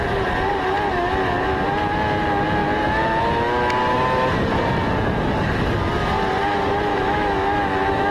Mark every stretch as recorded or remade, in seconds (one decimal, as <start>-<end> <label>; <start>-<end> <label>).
0.0-6.9 recorded; 6.9-8.1 remade